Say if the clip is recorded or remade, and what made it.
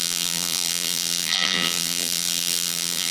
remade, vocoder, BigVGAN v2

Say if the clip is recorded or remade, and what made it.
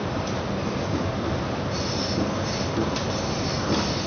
recorded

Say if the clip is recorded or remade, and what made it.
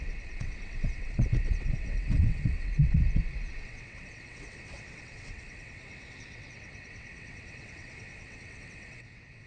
remade, vocoder, WaveNeXt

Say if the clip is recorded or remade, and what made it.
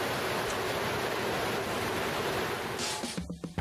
recorded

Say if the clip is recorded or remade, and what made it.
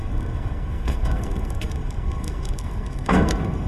remade, codec, SNAC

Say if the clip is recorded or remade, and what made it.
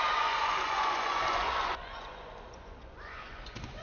remade, vocoder, Vocos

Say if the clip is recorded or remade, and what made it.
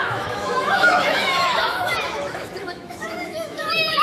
remade, autoencoder, DAC-VAE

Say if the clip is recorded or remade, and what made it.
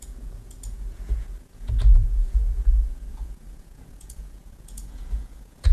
remade, vocoder, Vocos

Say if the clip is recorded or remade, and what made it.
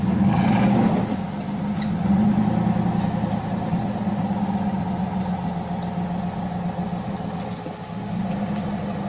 recorded